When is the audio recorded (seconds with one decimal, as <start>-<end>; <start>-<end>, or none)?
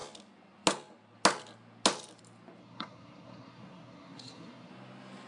0.0-2.6; 4.7-5.3